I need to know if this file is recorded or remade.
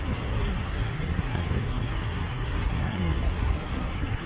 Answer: remade